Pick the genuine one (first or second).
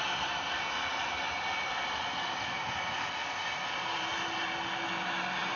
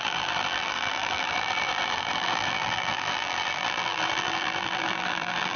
first